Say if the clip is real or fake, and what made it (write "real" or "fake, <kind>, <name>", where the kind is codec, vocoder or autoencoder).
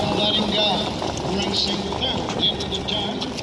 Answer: real